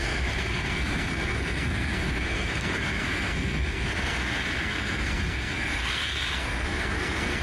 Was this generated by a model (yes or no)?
yes